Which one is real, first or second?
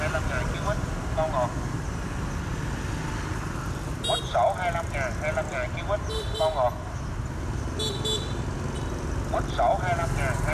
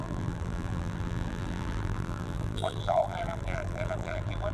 first